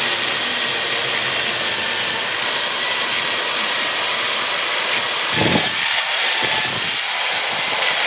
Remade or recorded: recorded